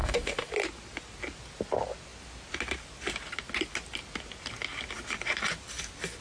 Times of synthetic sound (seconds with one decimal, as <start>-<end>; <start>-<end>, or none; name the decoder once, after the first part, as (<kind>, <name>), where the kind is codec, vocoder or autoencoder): 0.0-0.5 (autoencoder, DAC-VAE)